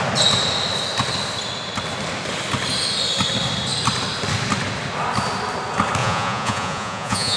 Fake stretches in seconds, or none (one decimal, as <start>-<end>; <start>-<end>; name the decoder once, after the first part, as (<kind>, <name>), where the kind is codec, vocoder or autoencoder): 6.0-7.4 (vocoder, Vocos)